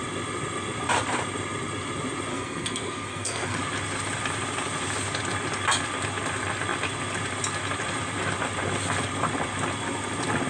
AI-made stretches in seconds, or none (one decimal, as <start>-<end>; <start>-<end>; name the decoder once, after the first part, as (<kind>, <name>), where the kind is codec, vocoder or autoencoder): 2.3-3.6 (codec, SNAC)

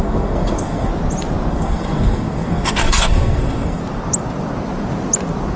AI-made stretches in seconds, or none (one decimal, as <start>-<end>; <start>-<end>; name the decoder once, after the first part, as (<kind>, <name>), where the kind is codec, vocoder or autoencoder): 0.0-0.9 (codec, SNAC); 1.5-3.8

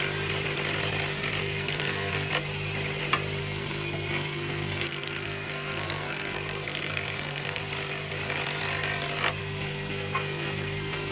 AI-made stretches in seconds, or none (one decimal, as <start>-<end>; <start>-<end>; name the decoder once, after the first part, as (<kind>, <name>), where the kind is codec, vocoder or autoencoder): 1.4-2.3 (codec, SNAC); 3.4-7.6; 9.4-11.1

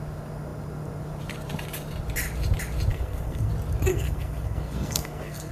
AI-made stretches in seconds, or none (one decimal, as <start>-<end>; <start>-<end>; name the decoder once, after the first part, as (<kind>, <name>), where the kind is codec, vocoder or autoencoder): 2.9-3.5 (codec, SNAC); 3.9-5.5